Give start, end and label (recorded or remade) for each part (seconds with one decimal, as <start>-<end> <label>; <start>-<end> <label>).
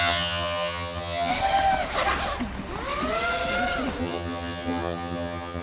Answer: 0.0-1.3 remade; 1.3-4.0 recorded; 4.0-5.6 remade